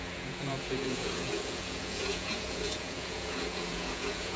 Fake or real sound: fake